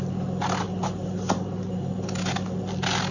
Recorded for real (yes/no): yes